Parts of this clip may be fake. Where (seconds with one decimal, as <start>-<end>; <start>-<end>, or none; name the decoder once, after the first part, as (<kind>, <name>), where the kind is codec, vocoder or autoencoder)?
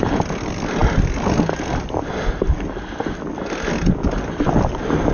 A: none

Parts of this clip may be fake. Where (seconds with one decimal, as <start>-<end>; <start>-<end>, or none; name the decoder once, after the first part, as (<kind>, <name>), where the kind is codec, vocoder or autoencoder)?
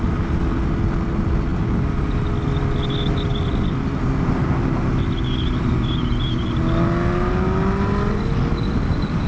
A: none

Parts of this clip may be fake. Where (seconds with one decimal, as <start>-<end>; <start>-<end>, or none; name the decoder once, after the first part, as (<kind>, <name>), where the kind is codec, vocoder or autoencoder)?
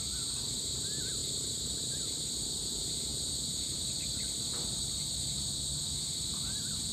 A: none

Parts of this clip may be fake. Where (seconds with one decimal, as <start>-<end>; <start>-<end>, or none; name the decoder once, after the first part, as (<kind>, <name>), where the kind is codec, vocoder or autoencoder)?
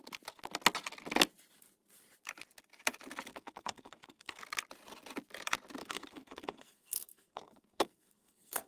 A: 3.3-4.4 (codec, SNAC); 5.8-8.7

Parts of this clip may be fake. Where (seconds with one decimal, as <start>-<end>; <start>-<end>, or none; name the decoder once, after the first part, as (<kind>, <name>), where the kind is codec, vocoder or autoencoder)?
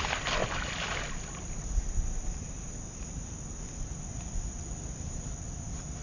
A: 0.0-0.4 (vocoder, BigVGAN v2); 4.0-6.0